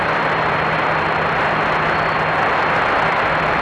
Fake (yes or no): no